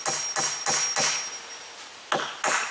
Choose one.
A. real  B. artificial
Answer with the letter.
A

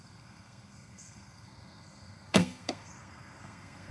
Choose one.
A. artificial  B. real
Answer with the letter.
A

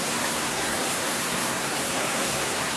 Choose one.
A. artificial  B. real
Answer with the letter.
A